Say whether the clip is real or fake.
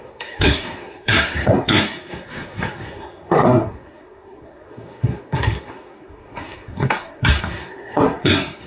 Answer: fake